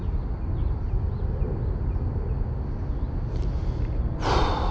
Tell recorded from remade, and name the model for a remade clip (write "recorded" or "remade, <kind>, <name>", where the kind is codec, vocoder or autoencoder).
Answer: recorded